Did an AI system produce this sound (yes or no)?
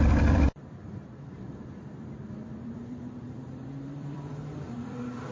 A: yes